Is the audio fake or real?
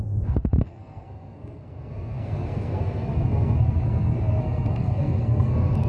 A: fake